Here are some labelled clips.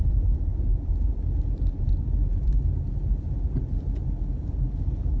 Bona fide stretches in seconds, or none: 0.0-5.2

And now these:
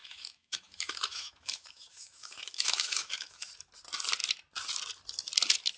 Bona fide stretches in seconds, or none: 3.5-5.8